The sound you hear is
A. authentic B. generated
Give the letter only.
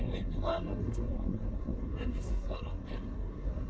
B